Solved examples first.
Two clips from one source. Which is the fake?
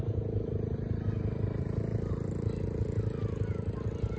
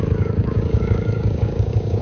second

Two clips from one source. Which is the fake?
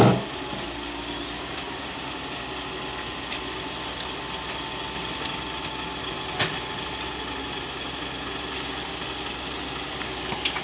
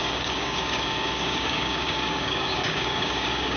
second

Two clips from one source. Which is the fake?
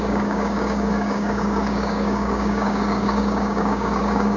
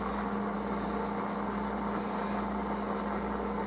first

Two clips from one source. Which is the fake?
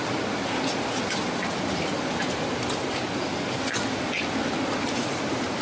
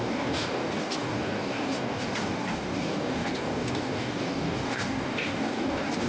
second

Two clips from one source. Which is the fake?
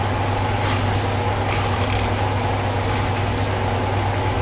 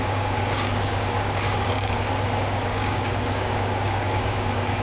second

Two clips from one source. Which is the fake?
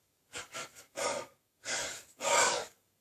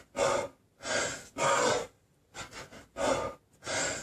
first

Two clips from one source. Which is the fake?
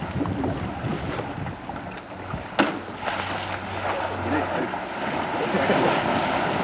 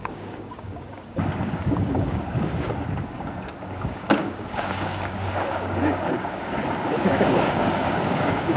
second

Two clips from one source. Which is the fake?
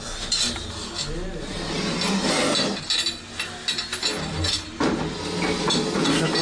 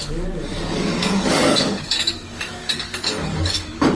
second